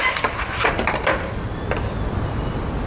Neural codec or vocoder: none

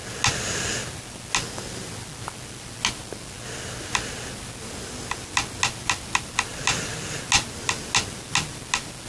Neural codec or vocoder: none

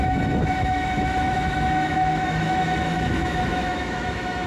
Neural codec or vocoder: autoencoder, DAC-VAE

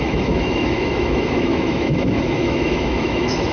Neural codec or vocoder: autoencoder, DAC-VAE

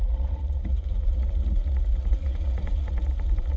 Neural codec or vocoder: vocoder, Vocos